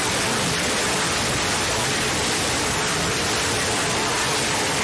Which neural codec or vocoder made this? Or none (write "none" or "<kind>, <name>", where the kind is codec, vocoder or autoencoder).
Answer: none